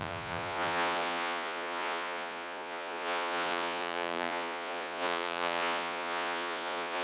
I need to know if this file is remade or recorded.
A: remade